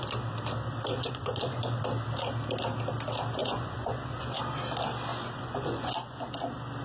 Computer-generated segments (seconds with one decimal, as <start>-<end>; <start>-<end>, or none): 1.0-1.8; 3.4-4.4; 5.1-6.3